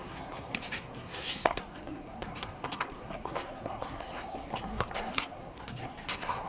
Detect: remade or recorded remade